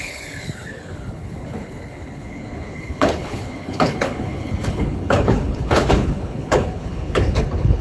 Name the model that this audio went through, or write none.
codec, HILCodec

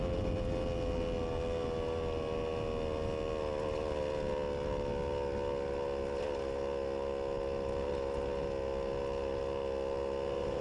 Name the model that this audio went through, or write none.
none